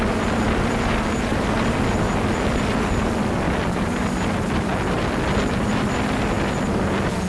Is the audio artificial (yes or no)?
no